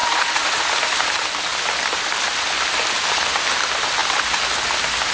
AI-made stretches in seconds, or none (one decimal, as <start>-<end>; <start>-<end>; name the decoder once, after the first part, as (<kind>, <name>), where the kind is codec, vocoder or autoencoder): 0.0-0.7 (vocoder, Vocos)